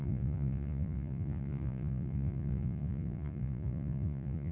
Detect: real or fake fake